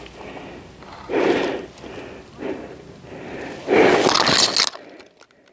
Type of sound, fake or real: real